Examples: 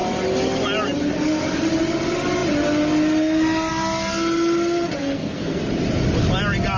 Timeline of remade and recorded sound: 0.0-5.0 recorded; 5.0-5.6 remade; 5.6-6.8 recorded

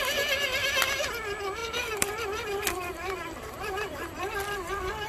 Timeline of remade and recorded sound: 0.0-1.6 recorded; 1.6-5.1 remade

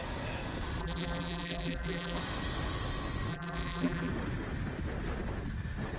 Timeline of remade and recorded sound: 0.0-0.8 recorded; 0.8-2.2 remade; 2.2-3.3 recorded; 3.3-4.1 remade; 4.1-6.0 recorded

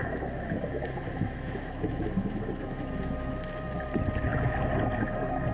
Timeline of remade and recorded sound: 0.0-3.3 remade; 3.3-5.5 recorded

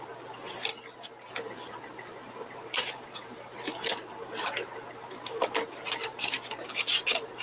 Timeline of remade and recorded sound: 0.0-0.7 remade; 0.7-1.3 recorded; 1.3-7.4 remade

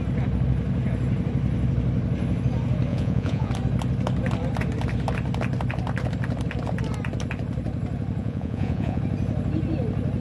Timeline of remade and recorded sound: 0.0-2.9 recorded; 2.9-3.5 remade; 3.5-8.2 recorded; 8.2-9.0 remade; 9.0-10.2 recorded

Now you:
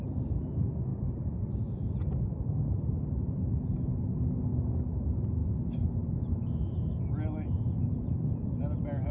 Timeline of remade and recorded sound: 0.0-9.1 recorded

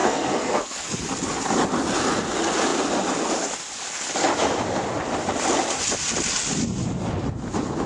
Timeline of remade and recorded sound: 0.0-1.1 remade; 1.1-7.9 recorded